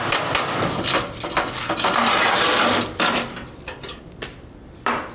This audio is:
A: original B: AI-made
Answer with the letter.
B